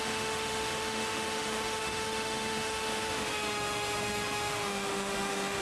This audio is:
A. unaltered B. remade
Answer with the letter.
B